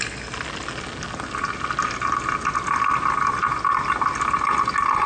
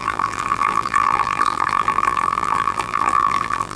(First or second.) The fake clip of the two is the second